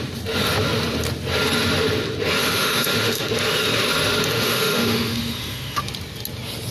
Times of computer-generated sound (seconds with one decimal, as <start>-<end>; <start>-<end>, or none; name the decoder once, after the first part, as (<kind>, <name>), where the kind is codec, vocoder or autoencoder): 2.4-3.3 (autoencoder, DAC-VAE); 4.3-5.8